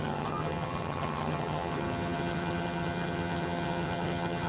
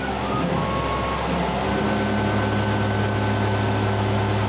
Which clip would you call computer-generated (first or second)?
first